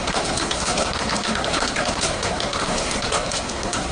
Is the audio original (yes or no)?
no